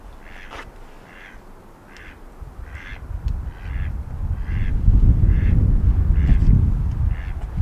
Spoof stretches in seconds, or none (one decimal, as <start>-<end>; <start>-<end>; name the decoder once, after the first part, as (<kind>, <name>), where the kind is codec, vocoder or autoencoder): 4.9-6.1 (vocoder, Vocos)